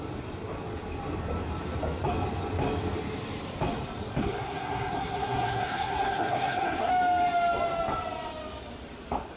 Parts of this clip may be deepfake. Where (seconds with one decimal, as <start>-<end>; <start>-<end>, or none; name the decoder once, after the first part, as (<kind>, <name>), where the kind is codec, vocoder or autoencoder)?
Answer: 4.2-6.9 (codec, SNAC)

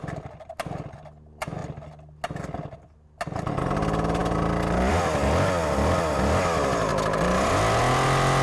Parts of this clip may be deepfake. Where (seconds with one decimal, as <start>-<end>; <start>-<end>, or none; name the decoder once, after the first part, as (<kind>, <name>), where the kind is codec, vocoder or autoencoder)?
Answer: none

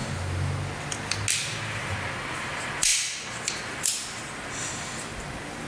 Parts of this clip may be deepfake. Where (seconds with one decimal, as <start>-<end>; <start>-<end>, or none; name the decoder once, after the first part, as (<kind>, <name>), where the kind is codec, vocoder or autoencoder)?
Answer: none

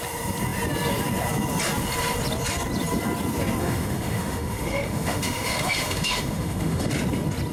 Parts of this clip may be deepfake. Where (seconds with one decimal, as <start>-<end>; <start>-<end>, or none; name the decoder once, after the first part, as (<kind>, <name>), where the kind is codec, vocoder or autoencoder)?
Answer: 3.6-6.9 (autoencoder, DAC-VAE)

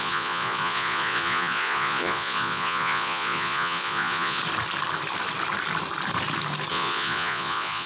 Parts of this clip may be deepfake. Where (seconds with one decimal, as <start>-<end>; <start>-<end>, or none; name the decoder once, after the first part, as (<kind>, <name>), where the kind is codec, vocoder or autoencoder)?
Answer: 0.0-4.4 (vocoder, Vocos); 6.7-7.9

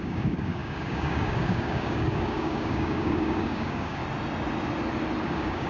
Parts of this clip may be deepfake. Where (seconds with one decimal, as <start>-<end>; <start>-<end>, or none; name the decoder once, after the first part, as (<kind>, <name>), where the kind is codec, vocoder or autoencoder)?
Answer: 0.0-4.0 (codec, DAC); 5.2-5.7

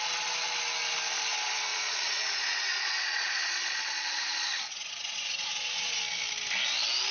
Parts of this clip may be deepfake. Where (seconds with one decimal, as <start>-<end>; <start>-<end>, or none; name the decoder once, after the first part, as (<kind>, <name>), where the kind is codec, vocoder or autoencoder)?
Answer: 1.7-6.0 (vocoder, Vocos)

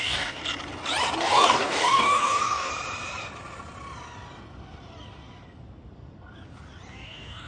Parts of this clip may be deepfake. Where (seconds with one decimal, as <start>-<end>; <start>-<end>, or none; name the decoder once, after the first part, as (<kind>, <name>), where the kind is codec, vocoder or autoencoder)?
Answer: 0.0-0.4 (codec, DAC); 1.2-2.7; 6.9-7.5